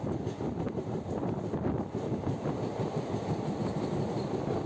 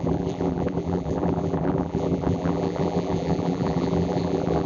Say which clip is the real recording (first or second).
first